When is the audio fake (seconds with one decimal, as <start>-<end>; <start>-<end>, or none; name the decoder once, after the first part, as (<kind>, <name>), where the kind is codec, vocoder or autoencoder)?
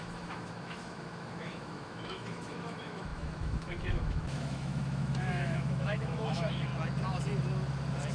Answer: 0.0-6.7 (autoencoder, DAC-VAE)